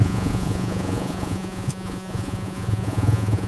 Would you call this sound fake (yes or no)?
yes